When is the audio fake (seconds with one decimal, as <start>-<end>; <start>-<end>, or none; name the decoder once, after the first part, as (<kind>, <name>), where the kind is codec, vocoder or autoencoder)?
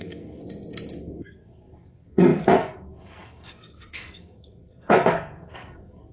0.0-0.4 (codec, SNAC); 1.0-6.1